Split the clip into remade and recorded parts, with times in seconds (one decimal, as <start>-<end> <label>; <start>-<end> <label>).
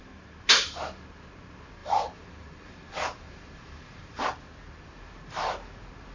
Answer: 0.0-1.8 recorded; 1.8-4.2 remade; 4.2-6.1 recorded